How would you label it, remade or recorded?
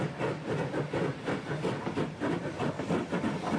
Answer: recorded